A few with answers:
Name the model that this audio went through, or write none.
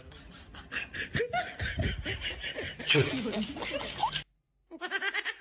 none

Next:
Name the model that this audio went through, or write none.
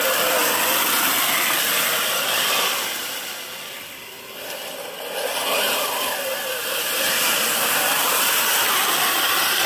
none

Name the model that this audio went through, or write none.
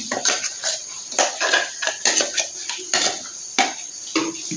vocoder, BigVGAN v2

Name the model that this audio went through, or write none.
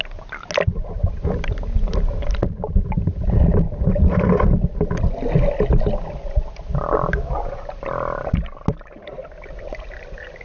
none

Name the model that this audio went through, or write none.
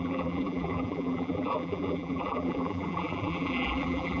vocoder, BigVGAN v2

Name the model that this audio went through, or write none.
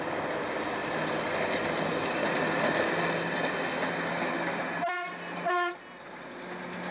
none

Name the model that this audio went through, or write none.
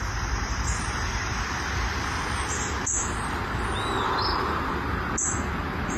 none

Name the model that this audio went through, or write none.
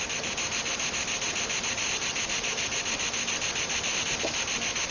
none